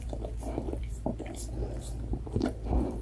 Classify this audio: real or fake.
fake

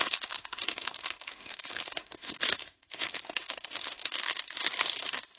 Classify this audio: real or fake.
fake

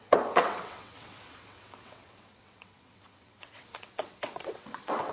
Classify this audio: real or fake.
fake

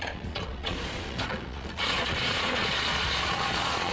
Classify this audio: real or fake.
fake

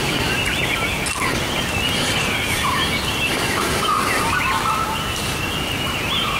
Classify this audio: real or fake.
real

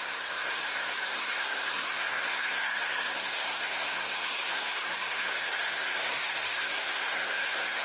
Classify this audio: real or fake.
fake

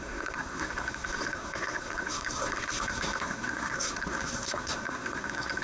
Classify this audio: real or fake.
fake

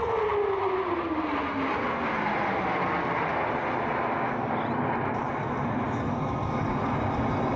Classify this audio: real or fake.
real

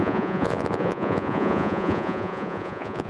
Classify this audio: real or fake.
fake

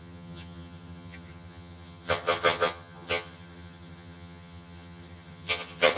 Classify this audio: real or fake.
fake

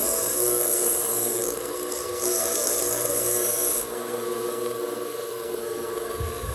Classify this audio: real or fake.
fake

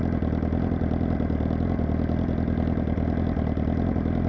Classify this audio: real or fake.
real